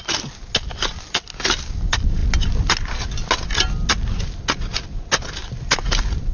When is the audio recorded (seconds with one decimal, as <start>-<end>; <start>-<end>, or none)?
0.0-6.3